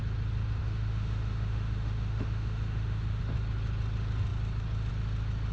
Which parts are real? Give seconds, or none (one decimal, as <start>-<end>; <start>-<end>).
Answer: 0.0-0.6; 3.2-5.5